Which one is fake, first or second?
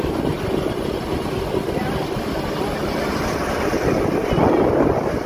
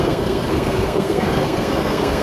second